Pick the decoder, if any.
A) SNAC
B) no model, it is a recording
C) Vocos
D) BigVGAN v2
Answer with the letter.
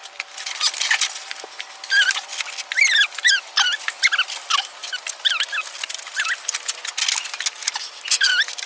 B